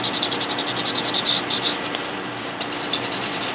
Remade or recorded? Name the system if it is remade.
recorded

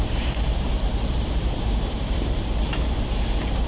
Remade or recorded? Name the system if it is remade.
remade, vocoder, BigVGAN v2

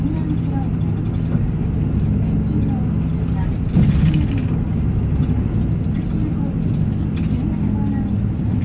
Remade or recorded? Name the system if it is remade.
recorded